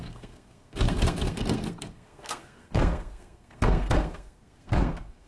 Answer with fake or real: fake